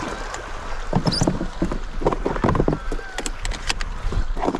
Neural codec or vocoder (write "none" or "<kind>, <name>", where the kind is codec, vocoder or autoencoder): none